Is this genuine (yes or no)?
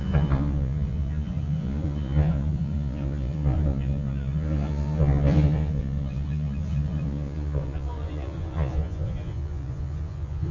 no